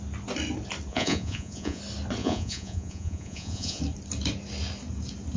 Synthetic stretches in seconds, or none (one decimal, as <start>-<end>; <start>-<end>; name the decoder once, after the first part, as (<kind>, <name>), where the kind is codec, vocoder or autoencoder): 0.9-1.8 (vocoder, Vocos); 2.2-3.8